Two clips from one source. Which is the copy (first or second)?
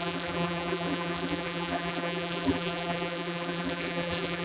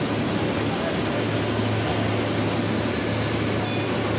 first